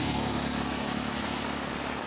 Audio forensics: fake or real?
fake